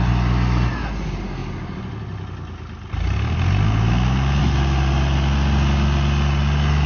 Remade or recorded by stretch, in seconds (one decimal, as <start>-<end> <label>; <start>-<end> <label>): 0.0-6.9 recorded